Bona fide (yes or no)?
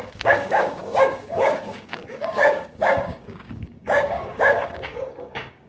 no